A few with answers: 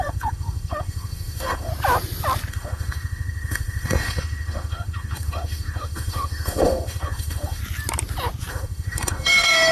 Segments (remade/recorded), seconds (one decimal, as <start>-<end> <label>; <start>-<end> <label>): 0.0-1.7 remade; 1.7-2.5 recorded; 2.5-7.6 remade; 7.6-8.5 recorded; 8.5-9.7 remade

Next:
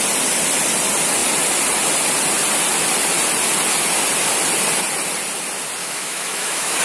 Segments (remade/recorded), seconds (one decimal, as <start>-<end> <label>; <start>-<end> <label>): 0.0-5.8 recorded; 5.8-6.8 remade

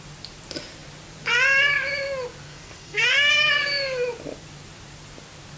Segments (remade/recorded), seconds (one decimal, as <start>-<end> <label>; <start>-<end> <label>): 0.0-2.5 recorded; 2.5-3.3 remade; 3.3-5.6 recorded

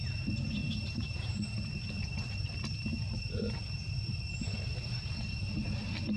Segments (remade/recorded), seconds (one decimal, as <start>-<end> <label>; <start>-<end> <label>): 0.0-0.6 recorded; 0.6-1.8 remade; 1.8-6.2 recorded